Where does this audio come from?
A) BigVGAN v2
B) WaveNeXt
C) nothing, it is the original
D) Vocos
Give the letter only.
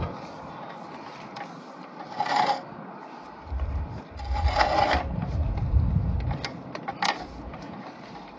C